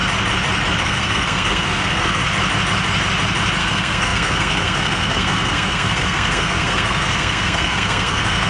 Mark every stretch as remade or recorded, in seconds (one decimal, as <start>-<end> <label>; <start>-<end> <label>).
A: 0.0-0.8 recorded; 0.8-2.2 remade; 2.2-3.6 recorded; 3.6-8.5 remade